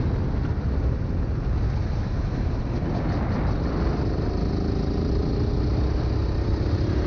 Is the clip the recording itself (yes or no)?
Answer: yes